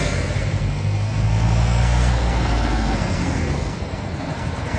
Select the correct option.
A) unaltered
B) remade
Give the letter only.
B